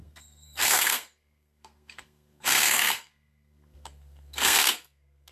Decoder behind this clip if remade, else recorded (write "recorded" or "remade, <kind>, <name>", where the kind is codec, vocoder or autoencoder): remade, codec, SNAC